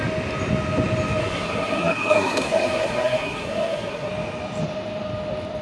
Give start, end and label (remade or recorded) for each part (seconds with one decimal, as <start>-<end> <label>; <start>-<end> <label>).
0.0-1.2 recorded; 1.2-4.1 remade; 4.1-5.6 recorded